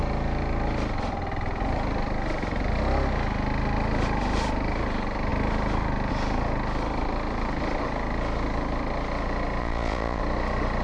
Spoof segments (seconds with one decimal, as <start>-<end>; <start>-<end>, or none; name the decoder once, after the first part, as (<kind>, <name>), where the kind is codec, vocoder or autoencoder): 9.6-10.2 (vocoder, Vocos)